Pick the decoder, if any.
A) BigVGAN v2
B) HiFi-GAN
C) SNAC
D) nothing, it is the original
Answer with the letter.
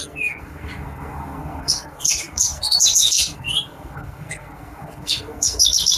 C